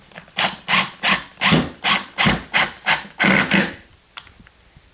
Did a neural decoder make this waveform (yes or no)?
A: no